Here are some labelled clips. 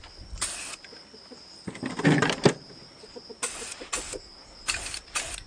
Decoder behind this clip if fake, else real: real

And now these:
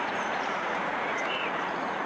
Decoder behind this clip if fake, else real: fake, vocoder, Vocos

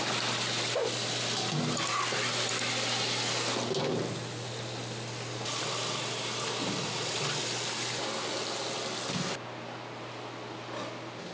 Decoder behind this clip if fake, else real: real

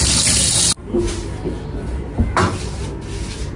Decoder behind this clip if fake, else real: real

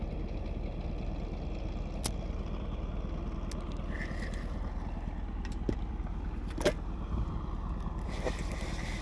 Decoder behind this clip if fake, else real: real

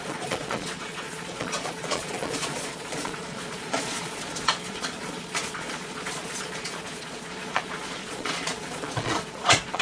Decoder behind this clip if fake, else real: fake, vocoder, Vocos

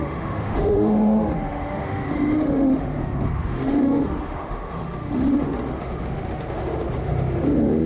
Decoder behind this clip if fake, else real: fake, autoencoder, DAC-VAE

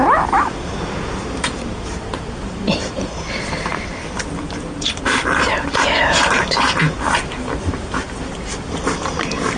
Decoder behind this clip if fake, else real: fake, vocoder, BigVGAN v2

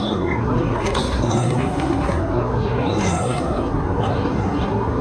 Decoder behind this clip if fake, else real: fake, codec, SNAC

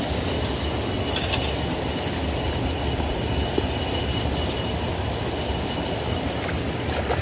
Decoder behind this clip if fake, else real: real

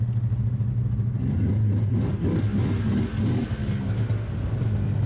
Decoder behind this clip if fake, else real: real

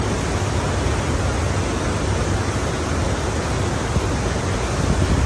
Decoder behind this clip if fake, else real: real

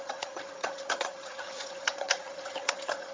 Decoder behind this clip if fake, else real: fake, vocoder, HiFi-GAN